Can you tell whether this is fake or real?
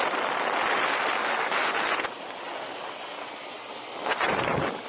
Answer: real